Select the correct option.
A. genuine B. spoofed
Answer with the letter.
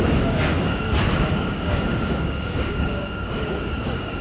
B